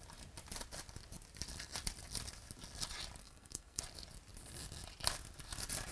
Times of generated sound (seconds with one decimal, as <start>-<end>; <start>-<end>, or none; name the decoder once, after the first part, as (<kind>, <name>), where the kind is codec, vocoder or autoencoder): 3.2-3.8 (codec, SNAC)